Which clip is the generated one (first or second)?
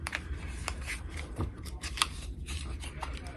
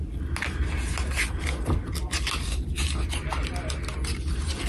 first